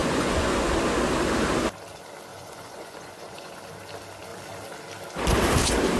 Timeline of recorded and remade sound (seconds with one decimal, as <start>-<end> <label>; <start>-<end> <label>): 0.0-0.7 remade; 0.7-2.3 recorded; 2.3-3.5 remade; 3.5-6.0 recorded